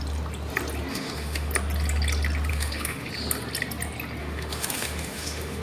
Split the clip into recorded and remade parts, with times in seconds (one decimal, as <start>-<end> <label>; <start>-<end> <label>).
0.0-0.9 recorded; 0.9-1.5 remade; 1.5-2.5 recorded; 2.5-3.1 remade; 3.1-4.2 recorded; 4.2-5.6 remade